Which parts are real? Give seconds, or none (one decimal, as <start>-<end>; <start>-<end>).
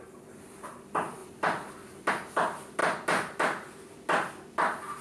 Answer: 0.0-5.0